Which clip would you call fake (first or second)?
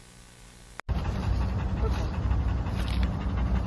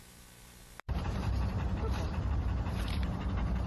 second